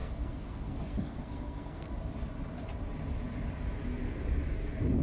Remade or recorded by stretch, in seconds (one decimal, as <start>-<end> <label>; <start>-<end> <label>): 0.0-1.9 remade; 1.9-5.0 recorded